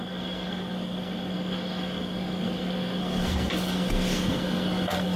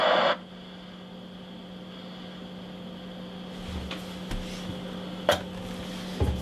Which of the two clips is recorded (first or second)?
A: second